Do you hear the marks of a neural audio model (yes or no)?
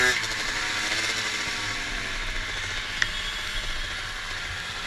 no